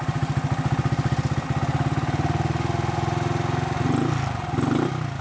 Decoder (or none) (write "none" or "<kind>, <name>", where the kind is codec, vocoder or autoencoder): none